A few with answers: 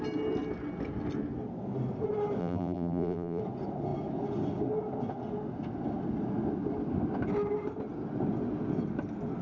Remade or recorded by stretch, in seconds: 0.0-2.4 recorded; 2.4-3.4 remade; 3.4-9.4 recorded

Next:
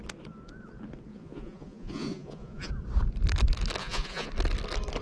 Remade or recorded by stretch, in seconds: 0.0-1.1 recorded; 1.1-2.7 remade; 2.7-3.8 recorded; 3.8-4.3 remade; 4.3-5.0 recorded

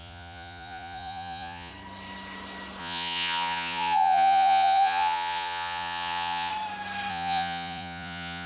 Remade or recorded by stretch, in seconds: 0.0-1.7 remade; 1.7-2.8 recorded; 2.8-6.5 remade; 6.5-7.1 recorded; 7.1-8.5 remade

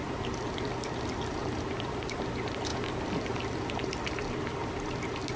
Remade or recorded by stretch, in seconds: 0.0-1.4 recorded; 1.4-2.1 remade; 2.1-2.7 recorded; 2.7-3.7 remade; 3.7-5.4 recorded

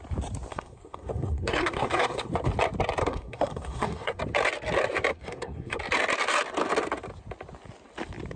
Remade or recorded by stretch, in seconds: 0.0-0.5 recorded; 0.5-2.3 remade; 2.3-3.0 recorded; 3.0-4.2 remade; 4.2-5.1 recorded; 5.1-5.8 remade; 5.8-8.4 recorded